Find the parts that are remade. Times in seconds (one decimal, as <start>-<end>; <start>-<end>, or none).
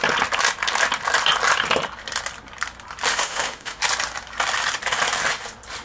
3.1-3.8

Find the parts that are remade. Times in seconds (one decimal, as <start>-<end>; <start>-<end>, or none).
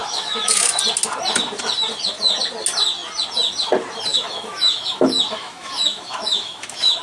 0.0-0.8; 4.1-7.0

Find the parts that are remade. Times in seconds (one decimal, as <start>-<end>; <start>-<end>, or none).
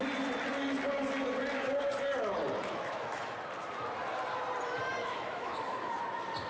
2.6-3.3; 5.0-5.9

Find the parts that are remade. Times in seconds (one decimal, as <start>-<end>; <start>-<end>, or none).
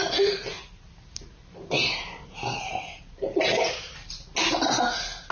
none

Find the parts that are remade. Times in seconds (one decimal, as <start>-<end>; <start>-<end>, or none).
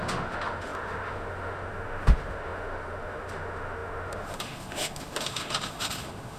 0.0-6.4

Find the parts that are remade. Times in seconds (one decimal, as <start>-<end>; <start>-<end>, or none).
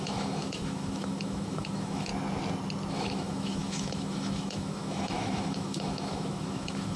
0.0-2.1; 2.9-7.0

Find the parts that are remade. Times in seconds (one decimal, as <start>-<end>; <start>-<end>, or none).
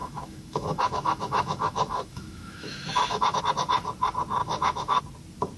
0.0-3.4; 4.4-5.0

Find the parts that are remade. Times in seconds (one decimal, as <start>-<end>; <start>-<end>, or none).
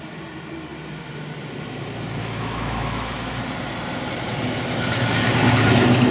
2.2-3.4